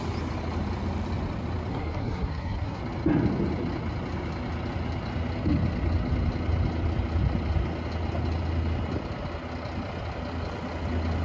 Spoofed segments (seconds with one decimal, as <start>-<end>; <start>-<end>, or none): 1.7-2.8